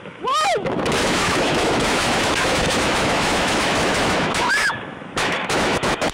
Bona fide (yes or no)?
no